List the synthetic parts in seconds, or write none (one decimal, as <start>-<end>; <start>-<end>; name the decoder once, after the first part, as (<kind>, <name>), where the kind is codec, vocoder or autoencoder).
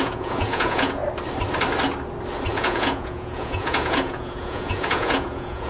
0.0-1.0 (vocoder, Vocos); 2.5-5.7